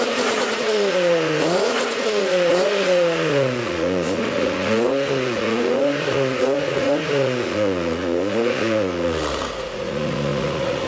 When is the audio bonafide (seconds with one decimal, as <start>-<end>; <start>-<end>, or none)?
none